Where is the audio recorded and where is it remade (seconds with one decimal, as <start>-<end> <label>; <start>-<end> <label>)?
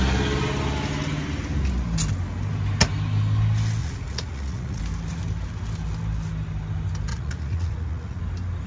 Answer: 0.0-3.8 recorded; 3.8-4.8 remade; 4.8-7.1 recorded; 7.1-8.2 remade; 8.2-8.7 recorded